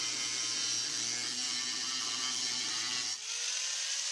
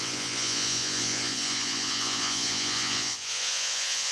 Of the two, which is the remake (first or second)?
second